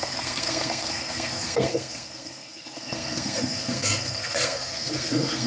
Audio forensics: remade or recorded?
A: remade